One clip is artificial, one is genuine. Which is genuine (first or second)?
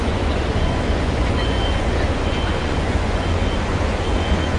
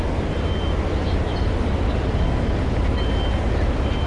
second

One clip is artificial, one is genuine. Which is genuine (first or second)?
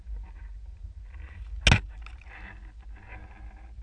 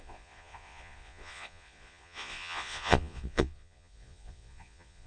first